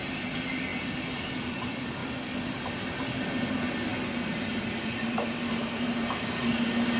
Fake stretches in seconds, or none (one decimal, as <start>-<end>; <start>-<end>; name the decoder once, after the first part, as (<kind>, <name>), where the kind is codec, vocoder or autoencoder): none